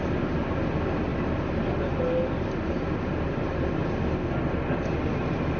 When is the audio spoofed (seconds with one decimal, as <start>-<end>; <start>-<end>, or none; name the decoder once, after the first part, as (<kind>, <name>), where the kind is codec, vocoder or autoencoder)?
none